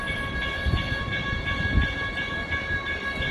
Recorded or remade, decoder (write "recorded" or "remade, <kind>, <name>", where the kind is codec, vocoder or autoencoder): remade, vocoder, BigVGAN v2